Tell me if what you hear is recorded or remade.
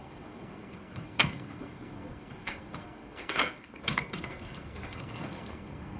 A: remade